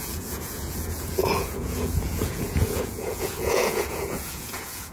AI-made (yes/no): yes